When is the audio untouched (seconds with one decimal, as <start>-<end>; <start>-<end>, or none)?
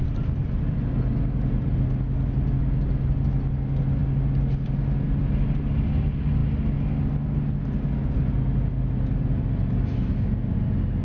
0.0-11.0